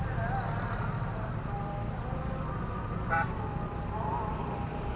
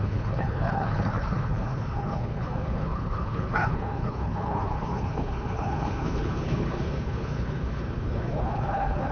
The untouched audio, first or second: first